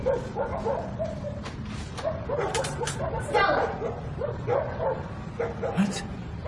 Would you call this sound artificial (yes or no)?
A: yes